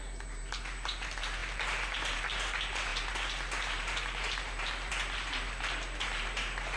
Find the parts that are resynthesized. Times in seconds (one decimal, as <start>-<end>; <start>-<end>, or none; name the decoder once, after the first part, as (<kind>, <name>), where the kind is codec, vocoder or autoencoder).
0.0-6.8 (vocoder, BigVGAN v2)